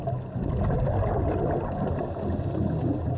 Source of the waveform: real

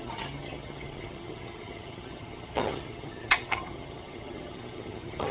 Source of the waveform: fake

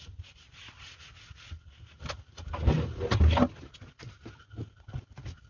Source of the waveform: real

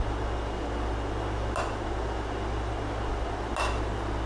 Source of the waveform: real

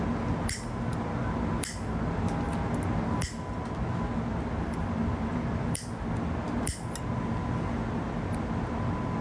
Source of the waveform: real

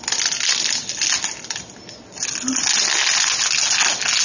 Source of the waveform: real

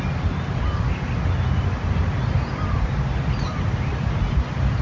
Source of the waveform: real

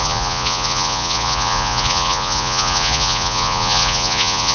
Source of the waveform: fake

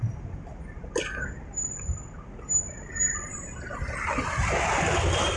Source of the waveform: real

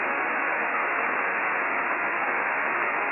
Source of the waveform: fake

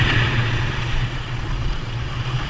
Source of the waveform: fake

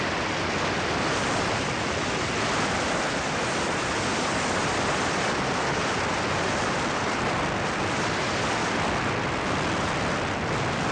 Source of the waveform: real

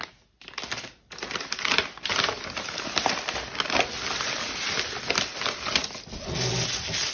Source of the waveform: real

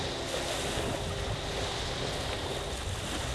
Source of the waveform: real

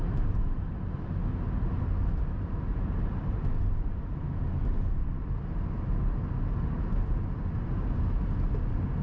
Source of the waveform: real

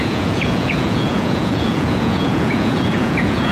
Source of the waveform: fake